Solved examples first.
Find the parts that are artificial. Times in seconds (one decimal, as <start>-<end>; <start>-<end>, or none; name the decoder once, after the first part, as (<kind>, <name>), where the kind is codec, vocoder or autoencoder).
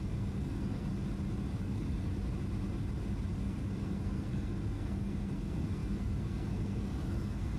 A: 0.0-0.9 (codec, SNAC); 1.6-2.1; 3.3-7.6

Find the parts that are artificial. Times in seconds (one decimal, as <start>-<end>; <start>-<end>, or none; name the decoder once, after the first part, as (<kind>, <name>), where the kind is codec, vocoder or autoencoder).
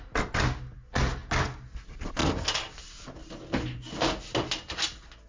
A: none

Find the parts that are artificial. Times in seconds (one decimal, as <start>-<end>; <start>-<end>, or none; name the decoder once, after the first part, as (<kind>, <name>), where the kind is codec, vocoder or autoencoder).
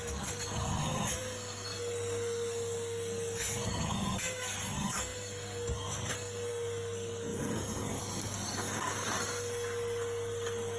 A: 0.0-10.8 (codec, SNAC)